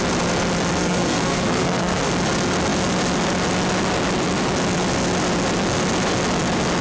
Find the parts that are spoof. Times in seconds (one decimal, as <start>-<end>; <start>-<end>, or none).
0.8-2.1